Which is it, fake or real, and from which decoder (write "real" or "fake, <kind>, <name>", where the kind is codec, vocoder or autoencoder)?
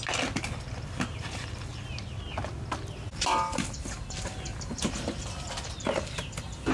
real